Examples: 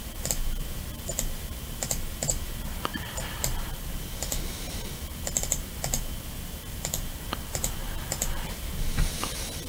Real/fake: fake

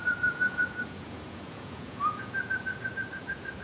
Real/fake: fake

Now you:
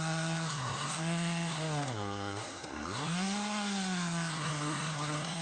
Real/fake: fake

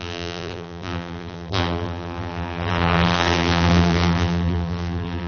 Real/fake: fake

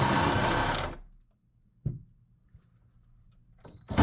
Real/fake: real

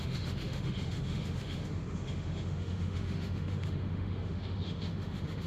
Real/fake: fake